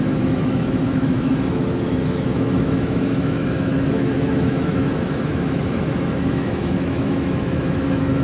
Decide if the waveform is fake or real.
fake